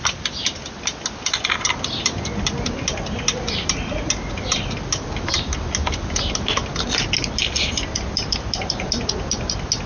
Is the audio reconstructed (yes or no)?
no